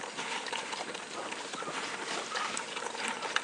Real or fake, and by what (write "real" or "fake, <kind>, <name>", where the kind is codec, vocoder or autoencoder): real